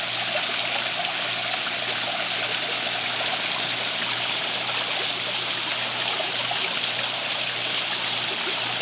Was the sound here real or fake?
real